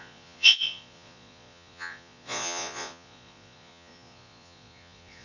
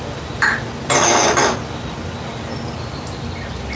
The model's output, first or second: first